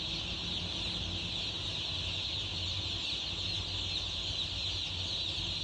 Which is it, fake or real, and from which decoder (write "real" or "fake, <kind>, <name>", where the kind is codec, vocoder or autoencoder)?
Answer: real